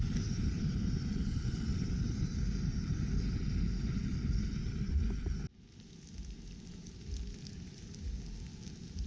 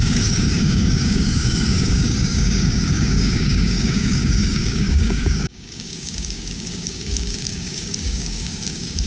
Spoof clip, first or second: second